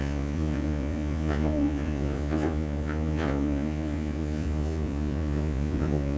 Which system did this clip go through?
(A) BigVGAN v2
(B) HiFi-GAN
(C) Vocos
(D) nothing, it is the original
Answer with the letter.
C